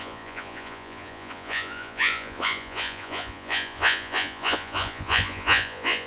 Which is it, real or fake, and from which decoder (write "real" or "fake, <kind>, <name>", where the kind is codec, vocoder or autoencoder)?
fake, vocoder, Vocos